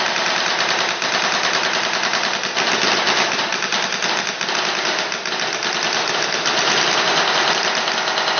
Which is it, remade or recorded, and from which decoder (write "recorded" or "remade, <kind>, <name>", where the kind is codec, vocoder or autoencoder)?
recorded